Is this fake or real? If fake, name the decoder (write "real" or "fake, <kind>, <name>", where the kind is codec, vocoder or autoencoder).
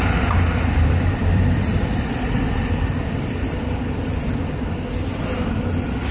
fake, vocoder, BigVGAN v2